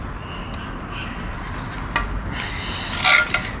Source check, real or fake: real